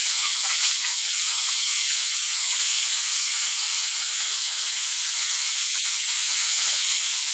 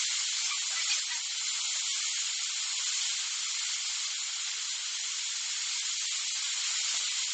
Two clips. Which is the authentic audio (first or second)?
second